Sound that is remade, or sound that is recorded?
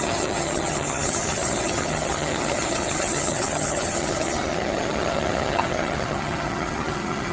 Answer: remade